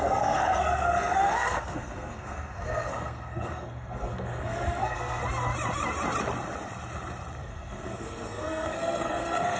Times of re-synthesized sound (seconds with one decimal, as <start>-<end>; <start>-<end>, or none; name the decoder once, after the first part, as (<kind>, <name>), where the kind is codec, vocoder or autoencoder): 0.0-5.2 (codec, SNAC); 7.4-9.6